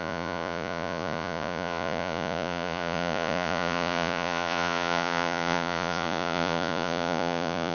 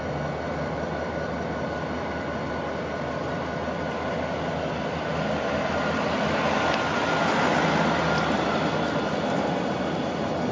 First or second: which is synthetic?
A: first